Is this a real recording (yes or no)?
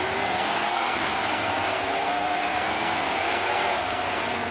no